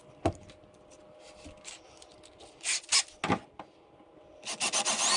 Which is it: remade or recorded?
recorded